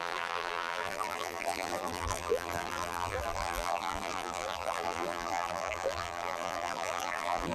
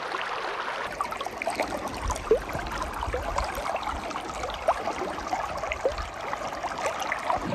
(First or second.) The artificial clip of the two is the first